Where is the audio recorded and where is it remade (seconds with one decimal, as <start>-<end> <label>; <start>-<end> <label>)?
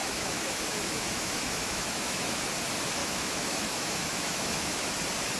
0.0-2.4 remade; 2.4-3.0 recorded; 3.0-4.9 remade; 4.9-5.4 recorded